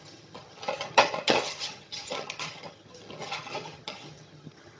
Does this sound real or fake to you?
fake